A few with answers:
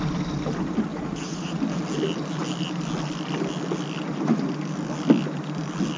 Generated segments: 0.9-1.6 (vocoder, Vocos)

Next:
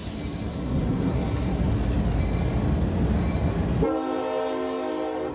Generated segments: 0.5-1.7 (codec, SNAC)

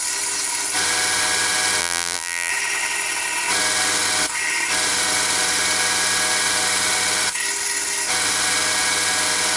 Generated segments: 1.8-2.5 (vocoder, BigVGAN v2)